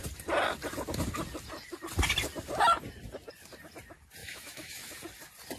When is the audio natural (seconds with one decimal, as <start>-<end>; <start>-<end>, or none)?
0.0-4.2; 4.9-5.6